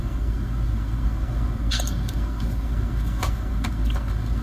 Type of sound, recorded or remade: remade